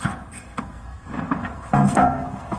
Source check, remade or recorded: remade